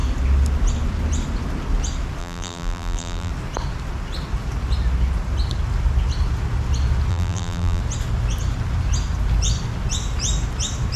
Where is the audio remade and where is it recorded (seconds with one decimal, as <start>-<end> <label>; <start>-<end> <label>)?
0.0-2.2 recorded; 2.2-3.3 remade; 3.3-7.1 recorded; 7.1-7.8 remade; 7.8-11.0 recorded